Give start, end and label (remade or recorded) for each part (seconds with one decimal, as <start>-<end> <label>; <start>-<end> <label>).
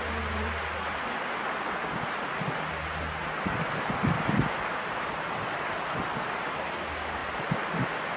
0.0-8.2 recorded